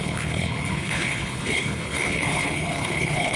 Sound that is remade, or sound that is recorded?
remade